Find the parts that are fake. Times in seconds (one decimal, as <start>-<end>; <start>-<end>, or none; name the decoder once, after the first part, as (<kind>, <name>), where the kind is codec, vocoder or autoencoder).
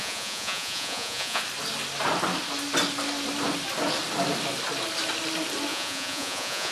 0.0-1.4 (vocoder, Vocos); 5.7-6.7